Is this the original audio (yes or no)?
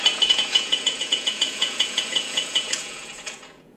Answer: no